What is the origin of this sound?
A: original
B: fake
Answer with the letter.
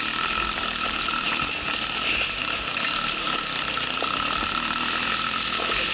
B